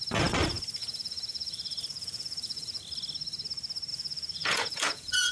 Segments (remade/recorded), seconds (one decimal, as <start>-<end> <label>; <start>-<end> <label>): 0.0-0.8 recorded; 0.8-2.8 remade; 2.8-3.9 recorded; 3.9-5.3 remade